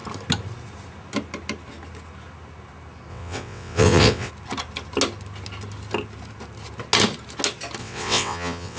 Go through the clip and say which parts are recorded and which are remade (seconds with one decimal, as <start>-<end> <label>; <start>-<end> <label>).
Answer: 0.0-3.1 recorded; 3.1-4.3 remade; 4.3-7.8 recorded; 7.8-8.8 remade